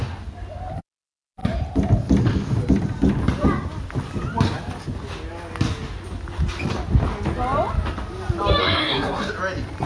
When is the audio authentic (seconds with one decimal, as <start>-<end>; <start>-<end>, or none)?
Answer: 0.0-8.6; 9.3-9.9